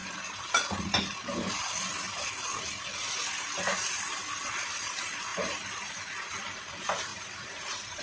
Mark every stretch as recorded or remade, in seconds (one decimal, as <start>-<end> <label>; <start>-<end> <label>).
0.0-5.3 recorded; 5.3-6.0 remade; 6.0-7.1 recorded; 7.1-8.0 remade